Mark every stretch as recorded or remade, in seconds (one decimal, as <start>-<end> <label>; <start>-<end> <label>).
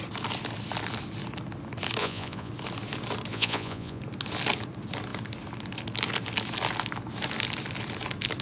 0.0-2.0 recorded; 2.0-2.5 remade; 2.5-3.3 recorded; 3.3-4.0 remade; 4.0-8.4 recorded